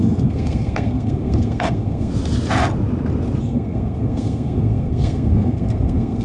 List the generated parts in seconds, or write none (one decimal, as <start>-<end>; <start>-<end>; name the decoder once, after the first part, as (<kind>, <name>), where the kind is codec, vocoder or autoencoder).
0.0-2.1 (codec, SNAC); 3.4-6.2